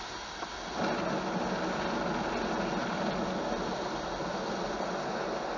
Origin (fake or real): real